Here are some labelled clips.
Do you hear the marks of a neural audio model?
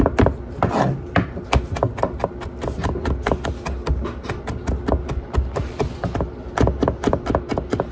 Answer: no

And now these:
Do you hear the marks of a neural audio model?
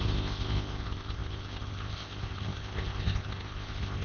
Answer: yes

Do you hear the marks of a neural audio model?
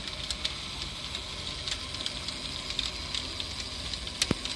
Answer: no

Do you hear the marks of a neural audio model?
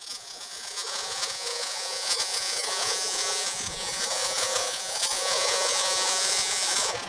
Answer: yes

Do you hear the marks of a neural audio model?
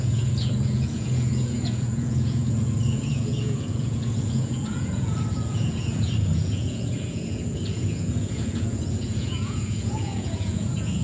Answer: yes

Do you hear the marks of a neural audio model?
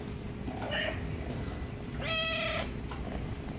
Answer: no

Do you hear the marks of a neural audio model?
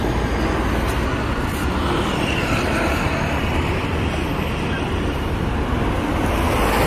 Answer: no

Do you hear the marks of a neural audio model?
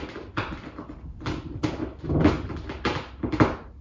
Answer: no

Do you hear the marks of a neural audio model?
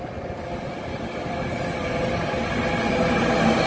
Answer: no